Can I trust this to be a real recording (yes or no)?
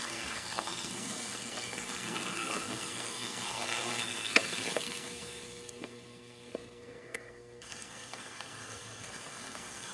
no